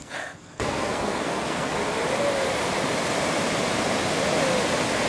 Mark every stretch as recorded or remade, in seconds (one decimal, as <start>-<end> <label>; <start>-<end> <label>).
0.0-1.7 remade; 1.7-5.1 recorded